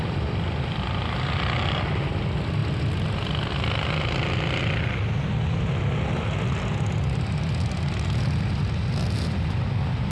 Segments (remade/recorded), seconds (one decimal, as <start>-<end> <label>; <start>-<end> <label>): 0.0-10.1 recorded